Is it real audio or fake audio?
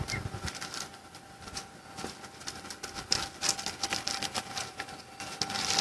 real